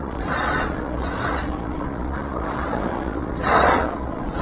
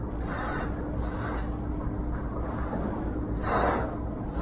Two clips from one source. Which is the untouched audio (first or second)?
second